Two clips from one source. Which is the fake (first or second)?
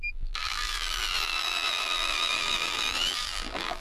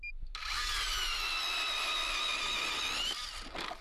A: first